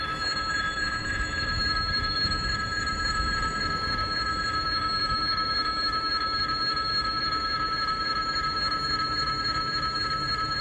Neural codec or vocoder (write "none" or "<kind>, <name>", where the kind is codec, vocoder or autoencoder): autoencoder, DAC-VAE